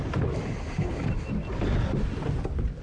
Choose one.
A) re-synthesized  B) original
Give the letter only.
B